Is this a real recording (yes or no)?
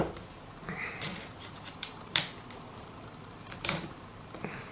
yes